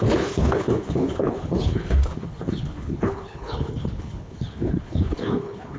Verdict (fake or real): fake